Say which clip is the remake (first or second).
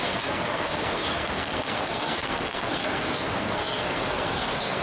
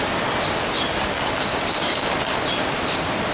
first